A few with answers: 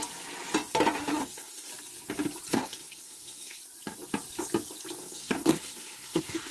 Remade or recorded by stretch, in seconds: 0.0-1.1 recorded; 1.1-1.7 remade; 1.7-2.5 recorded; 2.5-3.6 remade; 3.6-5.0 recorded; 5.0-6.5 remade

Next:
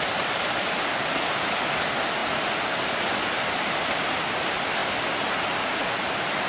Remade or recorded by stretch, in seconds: 0.0-6.5 recorded

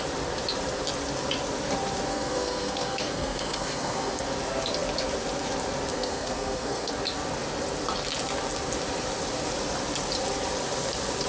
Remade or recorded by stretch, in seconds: 0.0-2.1 recorded; 2.1-4.2 remade; 4.2-5.9 recorded; 5.9-6.9 remade; 6.9-11.3 recorded

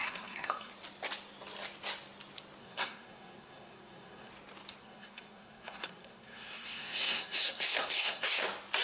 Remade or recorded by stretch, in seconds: 0.0-0.7 remade; 0.7-2.6 recorded; 2.6-4.3 remade; 4.3-4.8 recorded; 4.8-8.4 remade; 8.4-8.8 recorded